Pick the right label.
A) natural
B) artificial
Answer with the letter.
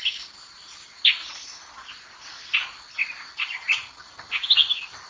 A